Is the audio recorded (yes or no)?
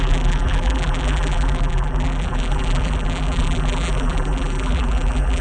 no